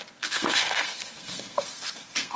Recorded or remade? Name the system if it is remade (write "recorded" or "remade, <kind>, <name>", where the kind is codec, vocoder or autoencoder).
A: remade, codec, SNAC